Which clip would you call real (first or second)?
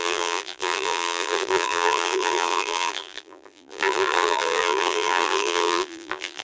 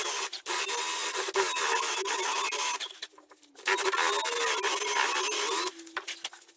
second